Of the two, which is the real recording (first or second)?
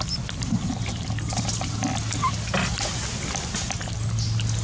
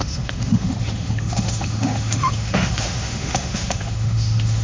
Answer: first